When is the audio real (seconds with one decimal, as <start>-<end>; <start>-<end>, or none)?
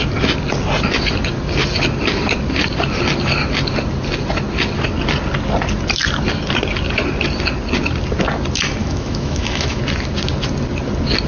0.0-8.8; 9.8-11.3